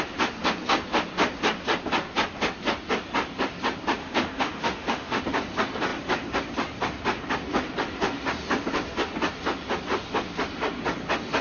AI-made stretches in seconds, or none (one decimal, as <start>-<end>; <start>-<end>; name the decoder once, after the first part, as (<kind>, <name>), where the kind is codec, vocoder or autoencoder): 4.0-5.2 (autoencoder, DAC-VAE)